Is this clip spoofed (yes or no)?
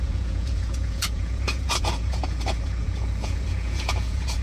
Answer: yes